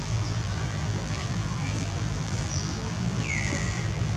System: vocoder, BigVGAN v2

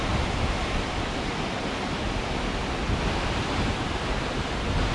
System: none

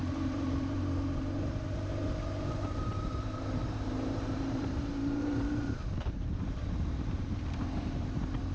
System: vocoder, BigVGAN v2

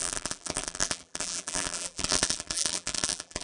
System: vocoder, BigVGAN v2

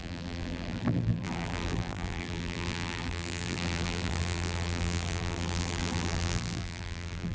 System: vocoder, BigVGAN v2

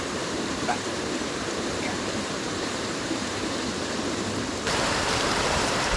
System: vocoder, BigVGAN v2